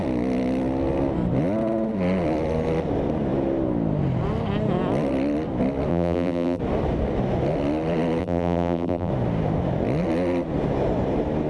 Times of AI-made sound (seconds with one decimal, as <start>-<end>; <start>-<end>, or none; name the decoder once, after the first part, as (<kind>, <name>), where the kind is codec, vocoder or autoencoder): 5.9-6.6 (vocoder, BigVGAN v2); 8.2-9.1